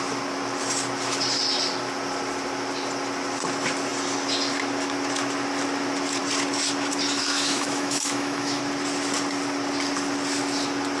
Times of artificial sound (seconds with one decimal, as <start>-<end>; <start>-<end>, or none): 7.2-8.6